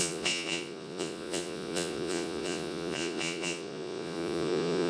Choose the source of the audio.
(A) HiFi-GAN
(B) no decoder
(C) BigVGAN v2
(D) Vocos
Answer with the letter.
D